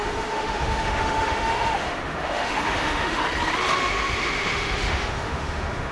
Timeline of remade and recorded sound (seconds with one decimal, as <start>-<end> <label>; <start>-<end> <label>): 0.0-3.2 remade; 3.2-3.8 recorded; 3.8-5.9 remade